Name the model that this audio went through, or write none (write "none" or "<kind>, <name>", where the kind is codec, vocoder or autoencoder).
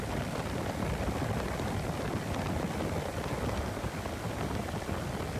none